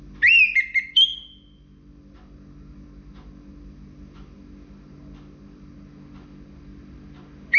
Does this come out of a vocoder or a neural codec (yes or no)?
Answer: no